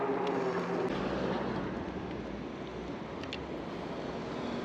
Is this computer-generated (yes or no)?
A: no